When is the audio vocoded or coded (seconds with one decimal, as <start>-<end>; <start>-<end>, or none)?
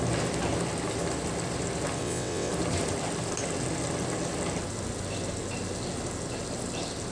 2.0-2.5